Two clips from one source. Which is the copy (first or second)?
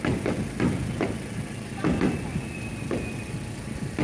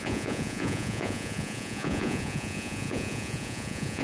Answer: second